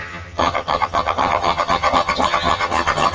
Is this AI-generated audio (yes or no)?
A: yes